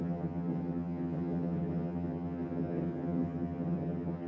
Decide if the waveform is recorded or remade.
remade